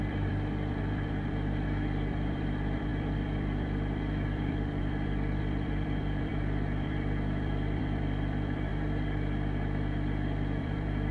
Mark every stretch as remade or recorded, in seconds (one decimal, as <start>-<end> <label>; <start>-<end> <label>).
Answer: 0.0-8.7 remade; 8.7-10.6 recorded; 10.6-11.1 remade